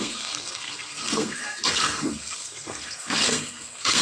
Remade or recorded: remade